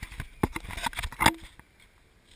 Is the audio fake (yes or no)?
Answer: no